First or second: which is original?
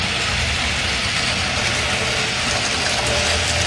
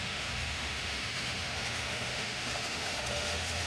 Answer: first